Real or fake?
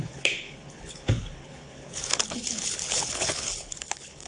fake